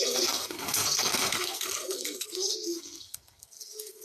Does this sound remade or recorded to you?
remade